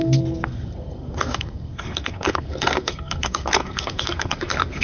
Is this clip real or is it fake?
fake